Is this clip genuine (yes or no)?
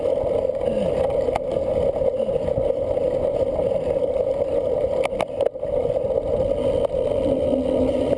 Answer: yes